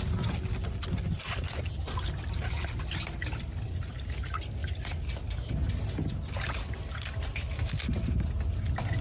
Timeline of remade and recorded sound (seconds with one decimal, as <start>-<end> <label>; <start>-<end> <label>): 0.0-4.6 recorded; 4.6-5.5 remade; 5.5-9.0 recorded